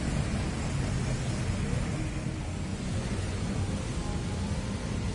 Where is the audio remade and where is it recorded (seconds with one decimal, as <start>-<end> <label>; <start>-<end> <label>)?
0.0-2.7 recorded; 2.7-3.6 remade; 3.6-5.1 recorded